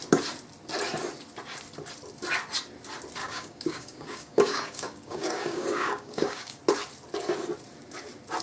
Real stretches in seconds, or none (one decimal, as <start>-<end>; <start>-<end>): 0.0-3.2; 6.6-8.4